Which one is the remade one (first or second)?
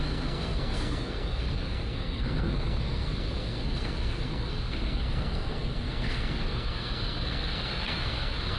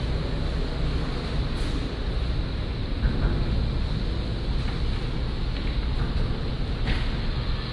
first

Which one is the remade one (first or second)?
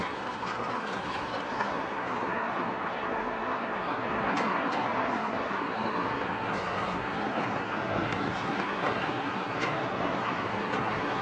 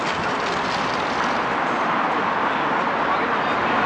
first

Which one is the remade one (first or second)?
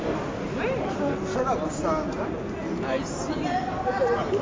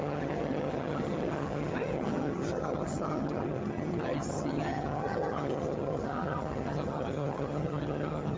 second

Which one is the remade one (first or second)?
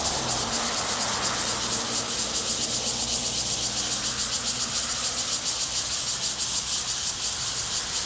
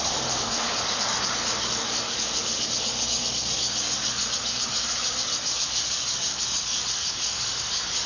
second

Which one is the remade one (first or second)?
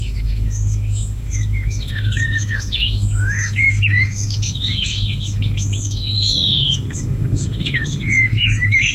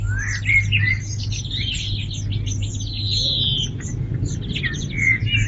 first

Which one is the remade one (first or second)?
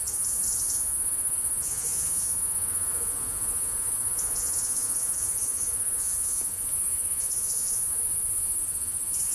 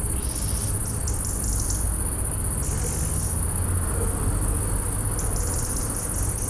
first